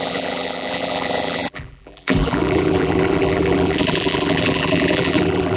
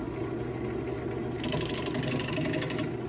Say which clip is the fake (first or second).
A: first